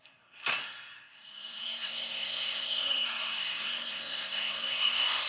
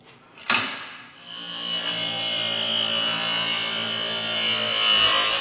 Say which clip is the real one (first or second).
second